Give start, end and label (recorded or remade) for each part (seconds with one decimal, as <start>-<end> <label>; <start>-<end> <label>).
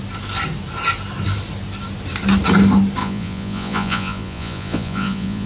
0.0-3.0 recorded; 3.0-5.5 remade